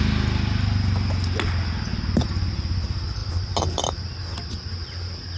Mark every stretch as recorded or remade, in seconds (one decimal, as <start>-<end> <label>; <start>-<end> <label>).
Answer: 0.0-5.4 recorded